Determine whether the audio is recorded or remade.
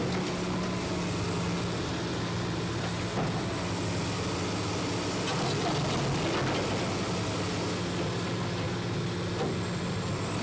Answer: recorded